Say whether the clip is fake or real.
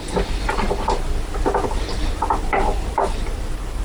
real